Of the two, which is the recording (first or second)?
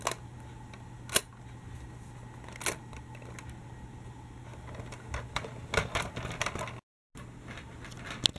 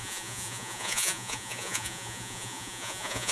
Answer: first